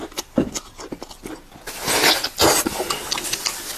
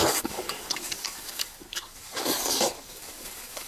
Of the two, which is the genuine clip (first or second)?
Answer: first